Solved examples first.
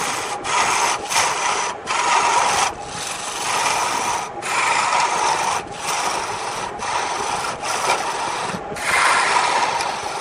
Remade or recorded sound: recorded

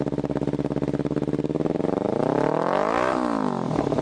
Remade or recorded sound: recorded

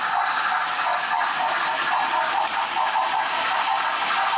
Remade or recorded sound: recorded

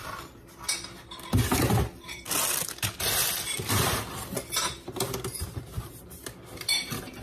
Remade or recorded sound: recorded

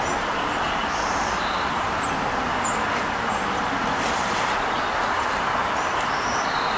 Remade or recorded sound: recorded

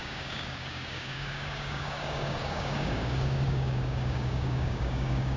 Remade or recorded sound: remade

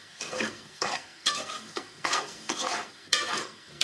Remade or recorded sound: remade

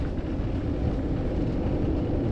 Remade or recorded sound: recorded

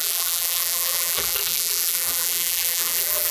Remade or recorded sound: remade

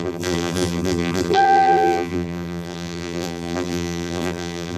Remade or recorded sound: remade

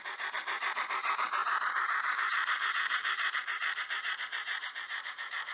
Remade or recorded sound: remade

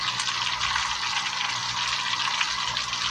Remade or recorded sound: recorded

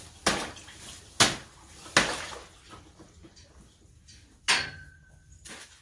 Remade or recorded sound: recorded